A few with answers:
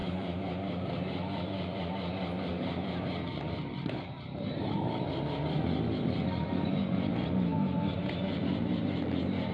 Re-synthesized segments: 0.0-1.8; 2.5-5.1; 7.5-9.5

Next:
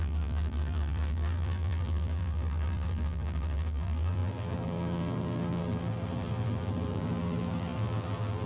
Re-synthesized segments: 0.0-8.5

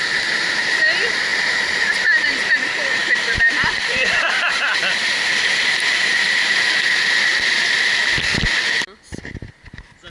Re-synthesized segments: 0.0-4.8; 5.4-7.3

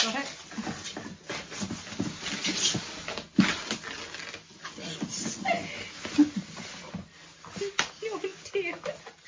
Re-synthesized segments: none

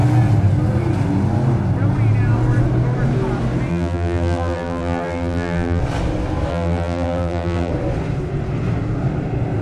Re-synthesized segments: 3.7-5.8; 6.5-7.7